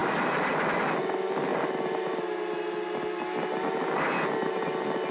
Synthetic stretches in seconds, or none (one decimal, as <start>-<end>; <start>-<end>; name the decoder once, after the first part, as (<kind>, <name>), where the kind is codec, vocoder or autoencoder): 0.0-0.5 (vocoder, BigVGAN v2)